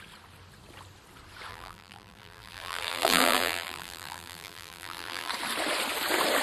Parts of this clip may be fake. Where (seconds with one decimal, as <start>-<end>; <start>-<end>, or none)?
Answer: 1.5-5.3